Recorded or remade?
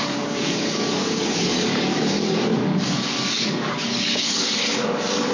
remade